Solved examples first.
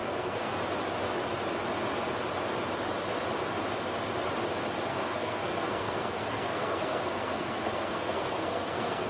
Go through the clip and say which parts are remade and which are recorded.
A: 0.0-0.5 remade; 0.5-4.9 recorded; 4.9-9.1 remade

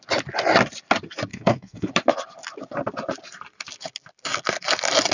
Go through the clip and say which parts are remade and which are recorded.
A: 0.0-1.3 recorded; 1.3-1.9 remade; 1.9-5.1 recorded

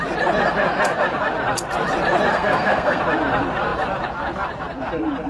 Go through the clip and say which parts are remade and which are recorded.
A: 0.0-2.3 recorded; 2.3-3.0 remade; 3.0-5.3 recorded

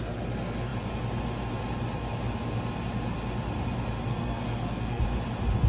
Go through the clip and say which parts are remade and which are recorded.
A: 0.0-4.1 recorded; 4.1-5.0 remade; 5.0-5.7 recorded

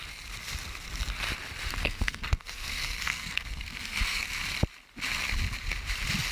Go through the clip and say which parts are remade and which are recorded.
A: 0.0-1.8 recorded; 1.8-4.4 remade; 4.4-6.3 recorded

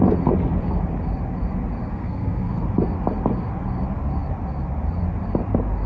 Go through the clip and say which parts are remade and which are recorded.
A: 0.0-1.9 recorded; 1.9-2.5 remade; 2.5-5.9 recorded